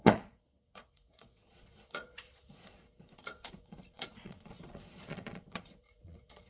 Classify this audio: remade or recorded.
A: remade